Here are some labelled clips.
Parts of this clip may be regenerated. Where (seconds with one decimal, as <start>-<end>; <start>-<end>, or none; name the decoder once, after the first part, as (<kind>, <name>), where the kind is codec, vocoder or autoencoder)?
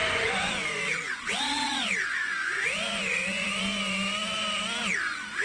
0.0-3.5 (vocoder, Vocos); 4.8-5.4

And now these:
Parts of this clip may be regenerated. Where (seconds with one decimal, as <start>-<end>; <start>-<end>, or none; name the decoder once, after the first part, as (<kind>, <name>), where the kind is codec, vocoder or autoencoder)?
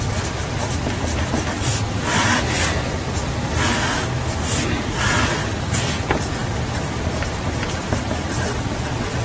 none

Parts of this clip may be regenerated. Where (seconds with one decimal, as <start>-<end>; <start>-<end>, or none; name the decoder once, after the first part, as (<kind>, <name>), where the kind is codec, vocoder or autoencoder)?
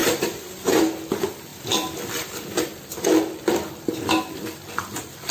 0.0-0.8 (vocoder, BigVGAN v2)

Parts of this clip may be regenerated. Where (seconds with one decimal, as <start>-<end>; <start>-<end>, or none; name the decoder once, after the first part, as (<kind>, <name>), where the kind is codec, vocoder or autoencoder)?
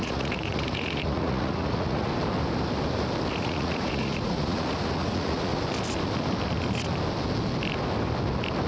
0.0-2.1 (vocoder, Vocos); 3.3-5.5